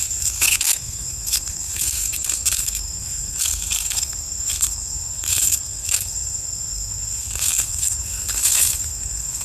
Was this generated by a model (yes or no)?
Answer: yes